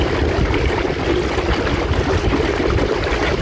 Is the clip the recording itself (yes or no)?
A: yes